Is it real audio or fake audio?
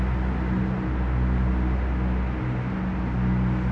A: real